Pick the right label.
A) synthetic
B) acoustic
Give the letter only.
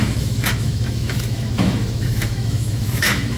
A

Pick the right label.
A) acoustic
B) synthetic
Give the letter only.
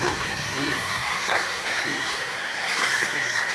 B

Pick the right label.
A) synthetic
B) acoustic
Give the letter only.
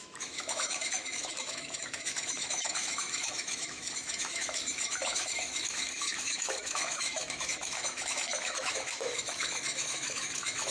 A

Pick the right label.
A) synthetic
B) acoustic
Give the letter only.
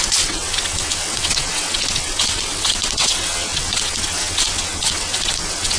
A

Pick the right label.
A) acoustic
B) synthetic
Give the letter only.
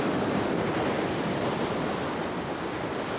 B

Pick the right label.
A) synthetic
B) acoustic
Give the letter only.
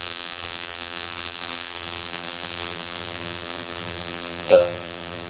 A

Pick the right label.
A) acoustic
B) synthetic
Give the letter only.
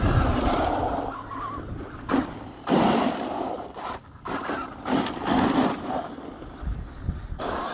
B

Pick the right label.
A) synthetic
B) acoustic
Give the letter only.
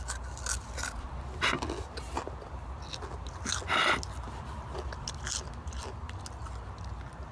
B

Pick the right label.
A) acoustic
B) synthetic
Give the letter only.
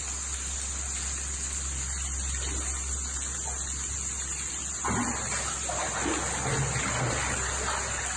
A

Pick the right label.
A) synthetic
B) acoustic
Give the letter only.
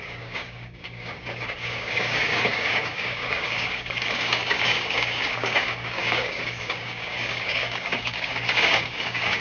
A